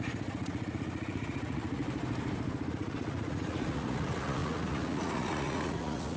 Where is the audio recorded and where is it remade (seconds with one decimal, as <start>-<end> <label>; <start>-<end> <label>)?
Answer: 0.0-1.8 remade; 1.8-2.7 recorded; 2.7-6.2 remade